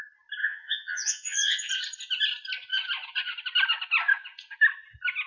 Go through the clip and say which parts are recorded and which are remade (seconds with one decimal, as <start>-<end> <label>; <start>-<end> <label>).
0.0-0.4 recorded; 0.4-1.7 remade; 1.7-5.3 recorded